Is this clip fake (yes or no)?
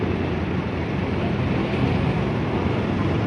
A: no